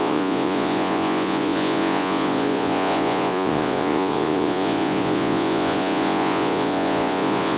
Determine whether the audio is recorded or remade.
remade